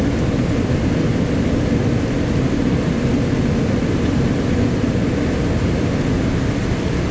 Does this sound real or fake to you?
real